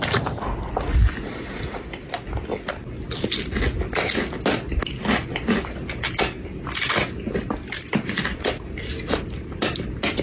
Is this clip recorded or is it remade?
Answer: recorded